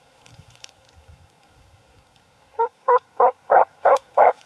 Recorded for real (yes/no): no